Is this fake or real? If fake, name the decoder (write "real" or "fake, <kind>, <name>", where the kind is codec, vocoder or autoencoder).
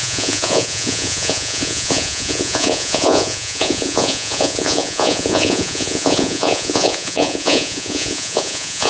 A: fake, vocoder, Vocos